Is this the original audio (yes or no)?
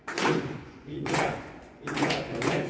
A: no